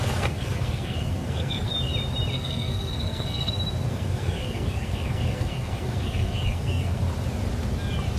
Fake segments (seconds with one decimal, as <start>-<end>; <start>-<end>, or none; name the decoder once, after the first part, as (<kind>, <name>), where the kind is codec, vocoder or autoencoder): 0.0-1.7 (codec, SNAC); 2.3-3.5; 3.9-7.0